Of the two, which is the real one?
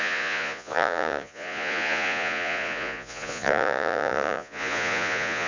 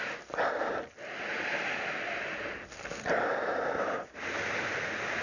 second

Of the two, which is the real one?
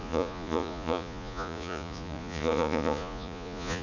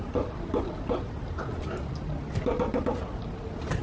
second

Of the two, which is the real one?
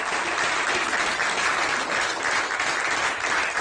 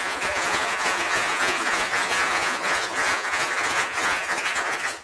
first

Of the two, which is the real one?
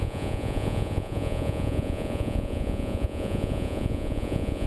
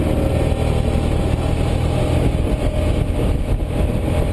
second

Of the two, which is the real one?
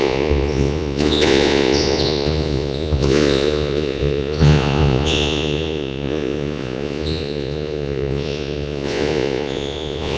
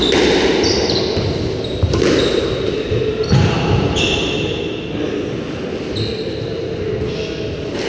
second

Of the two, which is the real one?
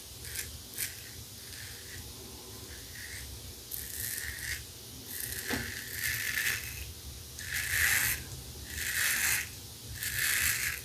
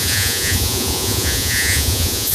first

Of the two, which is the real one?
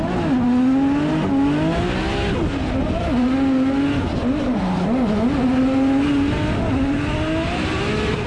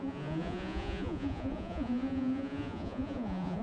first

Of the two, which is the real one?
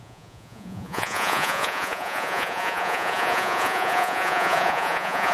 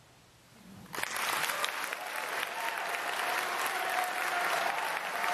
second